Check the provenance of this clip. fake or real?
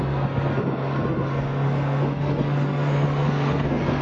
fake